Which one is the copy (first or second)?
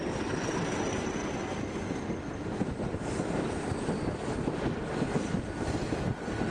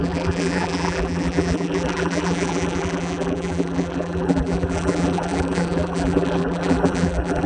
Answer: second